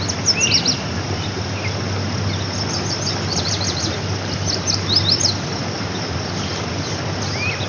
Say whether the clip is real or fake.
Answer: real